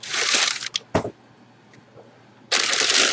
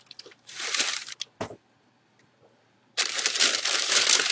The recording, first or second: first